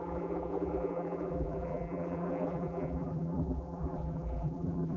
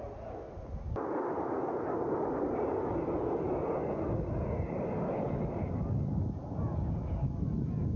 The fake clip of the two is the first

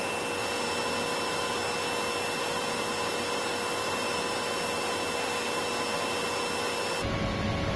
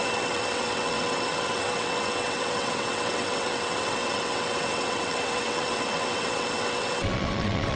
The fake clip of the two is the second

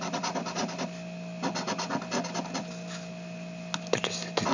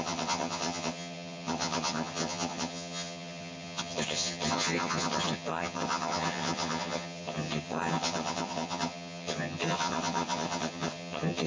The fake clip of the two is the second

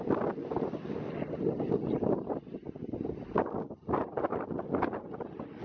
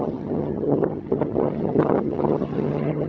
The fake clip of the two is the second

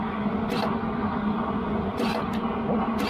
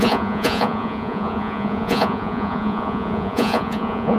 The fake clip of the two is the second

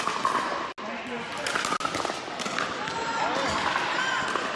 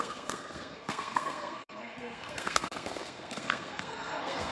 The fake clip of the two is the second